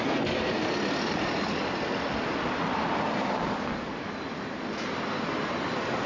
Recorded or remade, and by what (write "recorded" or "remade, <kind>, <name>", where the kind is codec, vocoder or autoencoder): recorded